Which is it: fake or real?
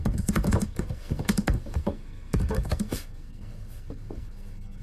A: fake